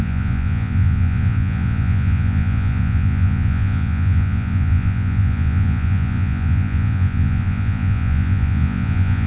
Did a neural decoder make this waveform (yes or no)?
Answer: yes